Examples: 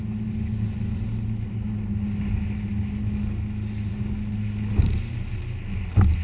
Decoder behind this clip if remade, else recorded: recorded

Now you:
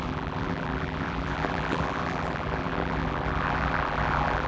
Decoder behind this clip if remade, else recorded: remade, vocoder, BigVGAN v2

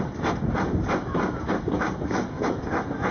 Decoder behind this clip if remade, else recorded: recorded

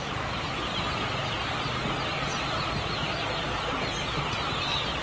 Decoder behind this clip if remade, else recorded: recorded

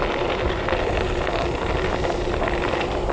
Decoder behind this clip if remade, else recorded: recorded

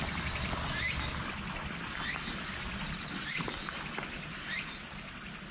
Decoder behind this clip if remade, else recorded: recorded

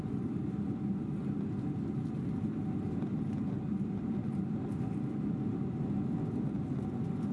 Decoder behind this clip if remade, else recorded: recorded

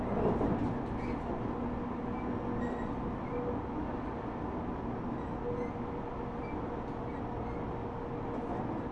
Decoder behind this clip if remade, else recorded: recorded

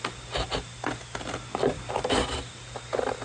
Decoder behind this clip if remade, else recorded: recorded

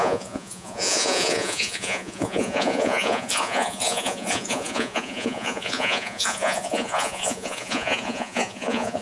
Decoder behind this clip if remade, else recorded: remade, vocoder, Vocos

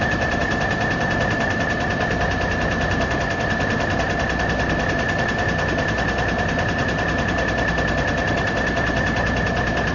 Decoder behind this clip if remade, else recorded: recorded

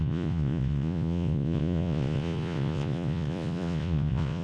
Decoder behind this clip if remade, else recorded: remade, vocoder, Vocos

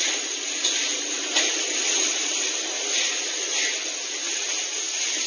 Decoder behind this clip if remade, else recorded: recorded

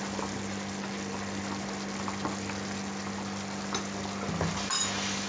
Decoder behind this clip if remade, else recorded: recorded